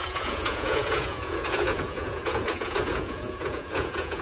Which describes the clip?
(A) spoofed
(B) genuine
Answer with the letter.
A